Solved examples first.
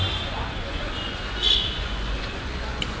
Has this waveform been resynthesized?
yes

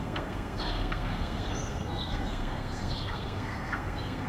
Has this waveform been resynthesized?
yes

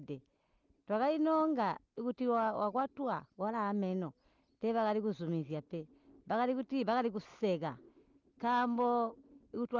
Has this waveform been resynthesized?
no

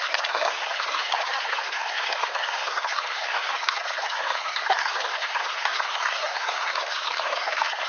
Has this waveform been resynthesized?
yes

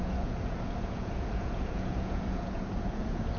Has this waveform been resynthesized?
yes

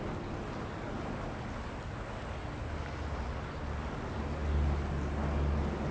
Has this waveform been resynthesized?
no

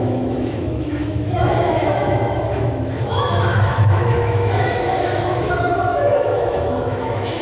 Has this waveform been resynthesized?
yes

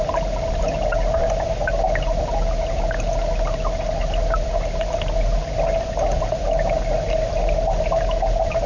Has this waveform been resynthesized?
no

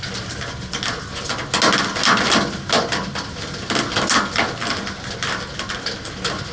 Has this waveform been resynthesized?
no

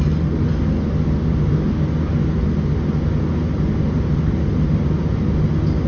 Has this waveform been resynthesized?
no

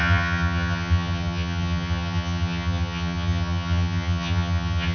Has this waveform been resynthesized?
yes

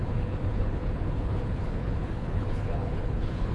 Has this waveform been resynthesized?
yes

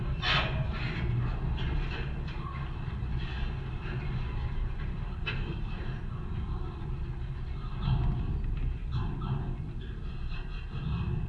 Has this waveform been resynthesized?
no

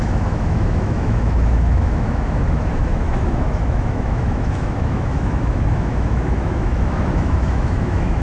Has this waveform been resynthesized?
yes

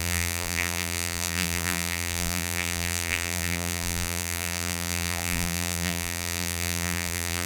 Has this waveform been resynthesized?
yes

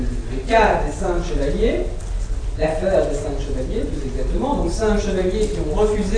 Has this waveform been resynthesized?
no